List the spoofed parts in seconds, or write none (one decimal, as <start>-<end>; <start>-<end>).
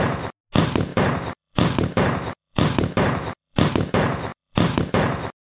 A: 0.9-3.7; 4.3-4.8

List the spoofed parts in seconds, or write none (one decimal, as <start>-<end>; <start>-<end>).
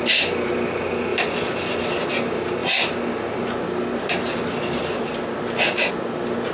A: none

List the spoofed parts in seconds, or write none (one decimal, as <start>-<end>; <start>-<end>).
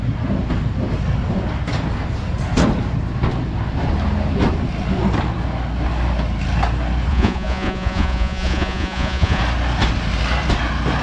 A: 7.1-9.4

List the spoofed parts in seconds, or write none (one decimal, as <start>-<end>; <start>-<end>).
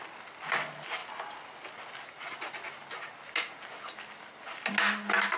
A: none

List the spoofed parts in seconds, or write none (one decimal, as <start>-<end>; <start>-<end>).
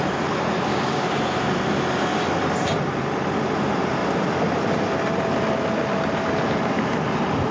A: 0.7-1.2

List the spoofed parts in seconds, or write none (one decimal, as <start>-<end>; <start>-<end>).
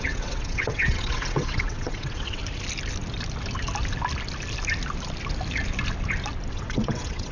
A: 0.0-2.4; 6.5-7.3